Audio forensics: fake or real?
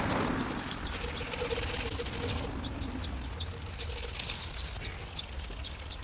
real